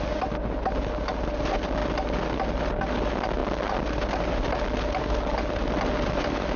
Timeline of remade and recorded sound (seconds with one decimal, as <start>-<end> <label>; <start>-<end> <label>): 0.0-6.6 recorded